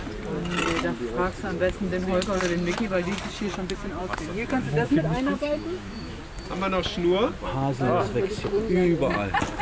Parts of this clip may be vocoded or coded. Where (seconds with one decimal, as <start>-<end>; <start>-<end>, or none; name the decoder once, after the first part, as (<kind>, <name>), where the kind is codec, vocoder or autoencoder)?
4.0-6.2 (autoencoder, DAC-VAE)